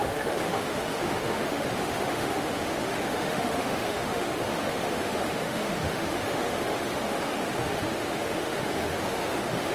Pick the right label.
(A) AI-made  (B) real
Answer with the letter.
A